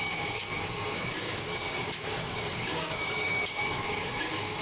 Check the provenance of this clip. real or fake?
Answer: fake